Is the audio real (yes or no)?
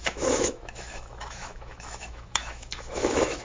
no